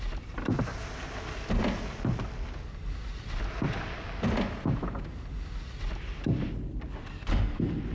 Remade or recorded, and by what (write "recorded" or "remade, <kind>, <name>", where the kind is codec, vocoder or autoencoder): recorded